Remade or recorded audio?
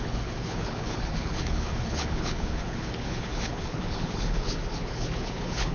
remade